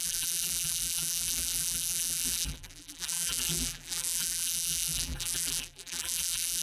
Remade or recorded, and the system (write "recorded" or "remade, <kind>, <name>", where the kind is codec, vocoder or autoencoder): remade, vocoder, BigVGAN v2